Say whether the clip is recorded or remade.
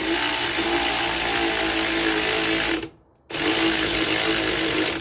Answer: recorded